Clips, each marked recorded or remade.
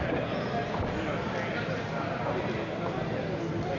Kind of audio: recorded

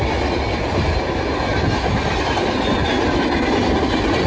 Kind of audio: recorded